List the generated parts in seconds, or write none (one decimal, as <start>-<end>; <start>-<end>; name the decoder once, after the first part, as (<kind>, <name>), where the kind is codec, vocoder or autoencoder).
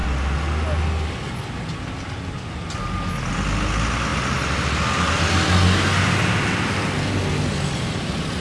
none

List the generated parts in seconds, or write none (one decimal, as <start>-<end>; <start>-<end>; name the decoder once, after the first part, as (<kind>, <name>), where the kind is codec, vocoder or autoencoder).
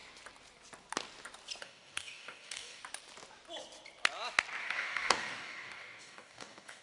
1.6-2.8 (codec, DAC); 4.6-6.8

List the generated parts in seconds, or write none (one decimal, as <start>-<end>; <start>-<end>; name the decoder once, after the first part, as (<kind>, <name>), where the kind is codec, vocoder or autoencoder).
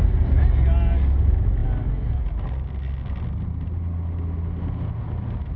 none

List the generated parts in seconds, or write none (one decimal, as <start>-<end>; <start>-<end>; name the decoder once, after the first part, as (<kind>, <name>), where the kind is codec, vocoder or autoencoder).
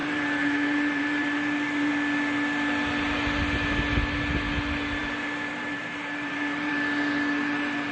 0.0-1.9 (vocoder, BigVGAN v2); 5.0-6.7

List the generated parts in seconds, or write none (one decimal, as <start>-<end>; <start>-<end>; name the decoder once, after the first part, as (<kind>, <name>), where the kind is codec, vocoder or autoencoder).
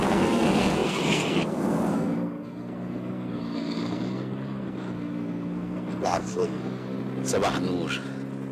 0.0-7.0 (codec, SNAC)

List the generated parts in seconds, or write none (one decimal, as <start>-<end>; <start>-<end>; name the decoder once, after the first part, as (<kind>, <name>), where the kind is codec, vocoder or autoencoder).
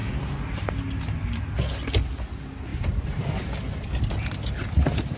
none